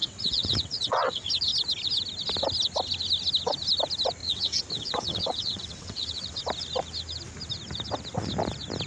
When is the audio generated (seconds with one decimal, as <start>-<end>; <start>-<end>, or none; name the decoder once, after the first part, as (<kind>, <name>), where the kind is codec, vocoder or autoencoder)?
0.0-1.3 (vocoder, WaveNeXt); 4.2-6.4